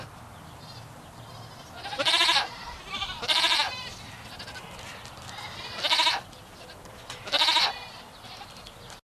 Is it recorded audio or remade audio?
recorded